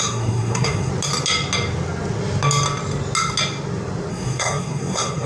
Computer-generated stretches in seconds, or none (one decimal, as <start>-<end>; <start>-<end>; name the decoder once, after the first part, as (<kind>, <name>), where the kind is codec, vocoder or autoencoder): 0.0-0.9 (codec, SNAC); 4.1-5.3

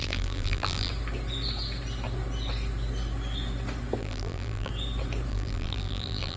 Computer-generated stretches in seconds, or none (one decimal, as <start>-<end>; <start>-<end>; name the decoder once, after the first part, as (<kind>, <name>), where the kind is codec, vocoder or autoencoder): 0.0-0.9 (vocoder, BigVGAN v2); 4.0-4.7; 5.3-6.4

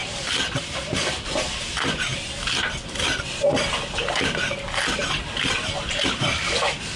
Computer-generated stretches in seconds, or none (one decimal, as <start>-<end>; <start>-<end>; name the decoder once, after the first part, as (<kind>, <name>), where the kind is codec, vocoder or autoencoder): 0.0-2.1 (vocoder, BigVGAN v2); 3.6-5.0; 6.2-7.0

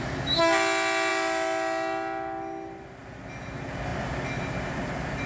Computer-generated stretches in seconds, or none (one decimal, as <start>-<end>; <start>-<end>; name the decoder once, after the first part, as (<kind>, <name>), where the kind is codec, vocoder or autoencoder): none

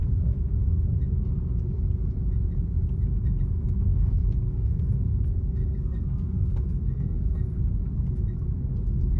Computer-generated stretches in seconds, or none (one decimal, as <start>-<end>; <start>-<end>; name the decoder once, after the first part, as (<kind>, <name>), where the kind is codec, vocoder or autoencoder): 3.9-7.6 (codec, SNAC)